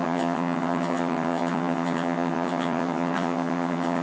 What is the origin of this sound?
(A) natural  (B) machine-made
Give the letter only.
B